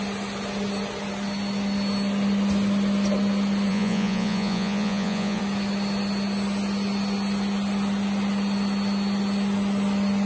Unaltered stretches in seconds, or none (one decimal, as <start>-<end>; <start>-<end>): 0.0-3.7; 5.4-10.3